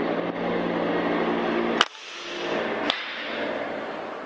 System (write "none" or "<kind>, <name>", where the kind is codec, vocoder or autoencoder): none